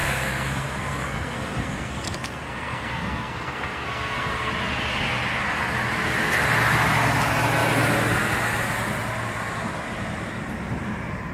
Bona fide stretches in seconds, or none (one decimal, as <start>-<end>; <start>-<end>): 4.5-11.3